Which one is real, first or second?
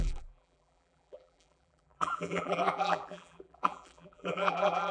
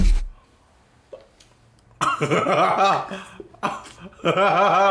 second